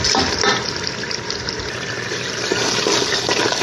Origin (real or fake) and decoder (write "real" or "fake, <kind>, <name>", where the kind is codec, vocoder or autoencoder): real